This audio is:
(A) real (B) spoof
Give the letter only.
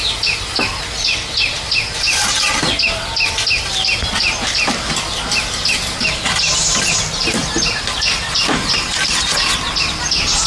A